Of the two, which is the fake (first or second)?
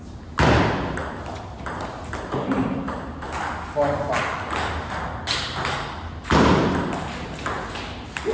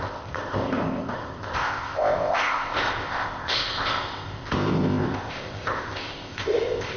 second